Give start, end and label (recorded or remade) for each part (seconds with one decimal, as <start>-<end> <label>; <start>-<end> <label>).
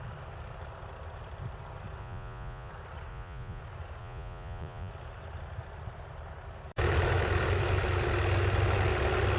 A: 0.0-2.0 recorded; 2.0-2.7 remade; 2.7-3.1 recorded; 3.1-3.6 remade; 3.6-4.0 recorded; 4.0-4.9 remade; 4.9-9.4 recorded